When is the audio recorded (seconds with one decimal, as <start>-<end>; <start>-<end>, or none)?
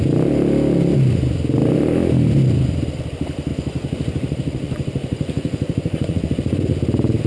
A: 0.0-3.5; 6.7-7.3